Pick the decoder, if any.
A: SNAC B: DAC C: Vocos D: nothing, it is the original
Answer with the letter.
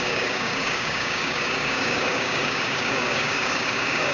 B